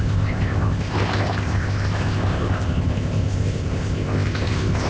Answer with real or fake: fake